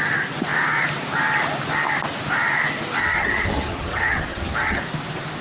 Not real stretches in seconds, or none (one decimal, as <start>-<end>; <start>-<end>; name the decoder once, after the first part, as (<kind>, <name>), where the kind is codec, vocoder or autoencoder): 3.0-4.8 (vocoder, HiFi-GAN)